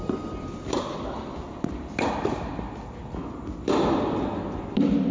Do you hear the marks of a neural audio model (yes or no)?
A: no